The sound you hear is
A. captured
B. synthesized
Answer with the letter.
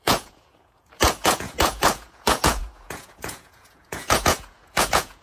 B